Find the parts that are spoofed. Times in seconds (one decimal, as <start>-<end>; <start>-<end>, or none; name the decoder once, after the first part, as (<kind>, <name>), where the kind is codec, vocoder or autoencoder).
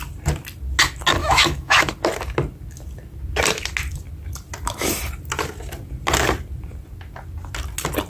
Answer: 1.2-1.9 (autoencoder, DAC-VAE)